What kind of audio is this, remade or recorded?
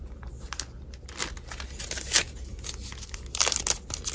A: recorded